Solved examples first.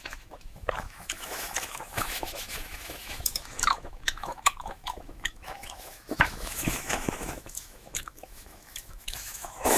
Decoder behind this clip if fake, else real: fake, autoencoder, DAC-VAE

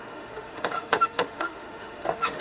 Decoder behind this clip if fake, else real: fake, autoencoder, DAC-VAE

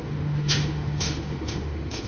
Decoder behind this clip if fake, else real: fake, autoencoder, DAC-VAE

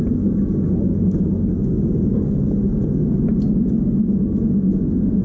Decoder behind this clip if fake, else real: real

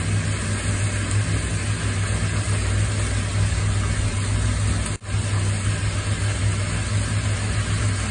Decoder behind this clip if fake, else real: real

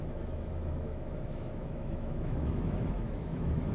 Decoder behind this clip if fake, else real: fake, autoencoder, DAC-VAE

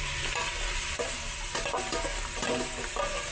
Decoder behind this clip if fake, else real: real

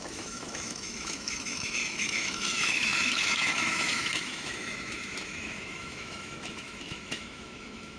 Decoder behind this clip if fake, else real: fake, autoencoder, DAC-VAE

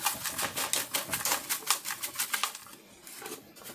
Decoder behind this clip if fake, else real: real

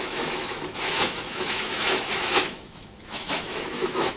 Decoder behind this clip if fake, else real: fake, autoencoder, DAC-VAE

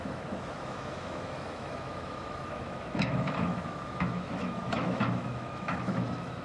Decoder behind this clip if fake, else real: fake, autoencoder, DAC-VAE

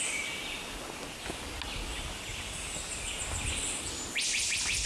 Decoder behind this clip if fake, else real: real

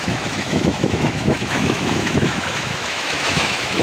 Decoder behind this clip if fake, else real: fake, autoencoder, DAC-VAE